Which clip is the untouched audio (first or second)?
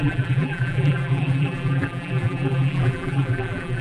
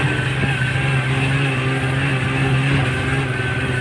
second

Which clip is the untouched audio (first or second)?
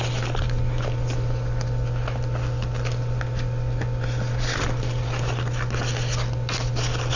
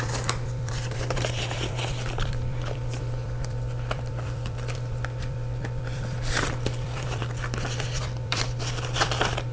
first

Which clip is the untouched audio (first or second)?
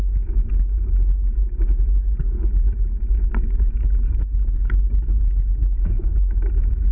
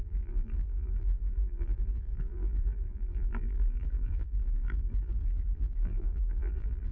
first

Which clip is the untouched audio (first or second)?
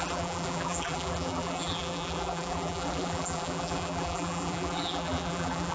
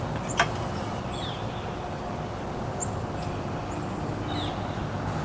second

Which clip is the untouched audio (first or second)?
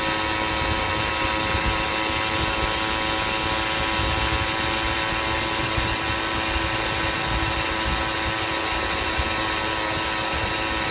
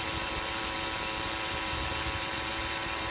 first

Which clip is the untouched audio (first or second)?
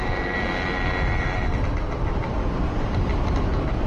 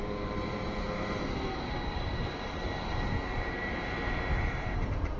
first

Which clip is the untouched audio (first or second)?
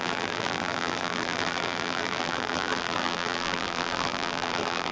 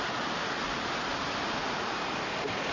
second